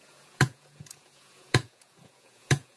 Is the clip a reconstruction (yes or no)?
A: yes